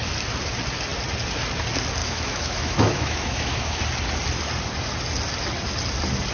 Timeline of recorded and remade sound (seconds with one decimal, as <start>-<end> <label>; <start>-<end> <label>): 0.0-2.0 recorded; 2.0-3.8 remade; 3.8-6.3 recorded

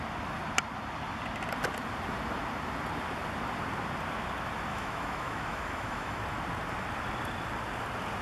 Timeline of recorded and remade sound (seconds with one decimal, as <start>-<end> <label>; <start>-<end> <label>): 0.0-4.7 recorded; 4.7-6.2 remade; 6.2-8.2 recorded

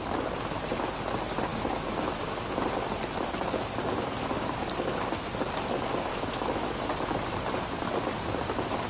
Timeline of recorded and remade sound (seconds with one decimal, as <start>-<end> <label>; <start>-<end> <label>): 0.0-1.5 recorded; 1.5-2.2 remade; 2.2-6.1 recorded; 6.1-6.7 remade; 6.7-8.9 recorded

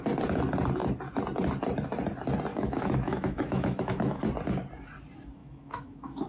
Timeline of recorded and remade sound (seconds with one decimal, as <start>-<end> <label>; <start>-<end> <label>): 0.0-2.5 recorded; 2.5-4.2 remade; 4.2-5.4 recorded; 5.4-6.3 remade

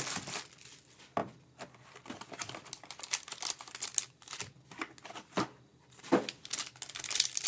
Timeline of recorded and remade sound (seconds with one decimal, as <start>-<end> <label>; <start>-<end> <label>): 0.0-7.5 recorded

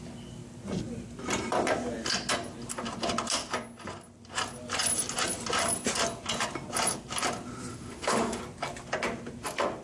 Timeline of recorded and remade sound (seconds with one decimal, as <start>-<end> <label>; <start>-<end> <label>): 0.0-7.7 recorded; 7.7-8.4 remade; 8.4-9.8 recorded

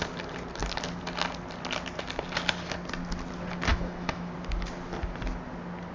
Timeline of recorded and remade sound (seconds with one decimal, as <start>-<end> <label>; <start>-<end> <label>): 0.0-3.7 recorded; 3.7-4.3 remade; 4.3-5.9 recorded